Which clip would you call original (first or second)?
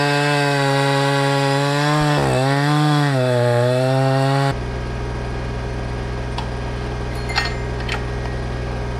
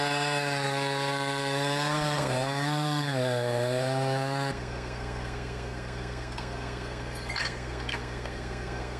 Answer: first